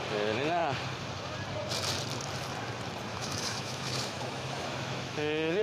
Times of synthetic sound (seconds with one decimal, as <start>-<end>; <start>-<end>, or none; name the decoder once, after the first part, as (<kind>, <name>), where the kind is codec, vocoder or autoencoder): 3.1-5.6 (autoencoder, DAC-VAE)